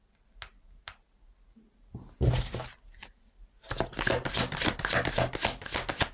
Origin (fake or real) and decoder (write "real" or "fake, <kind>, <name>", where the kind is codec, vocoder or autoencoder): real